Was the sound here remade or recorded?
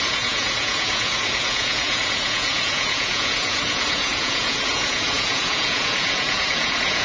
remade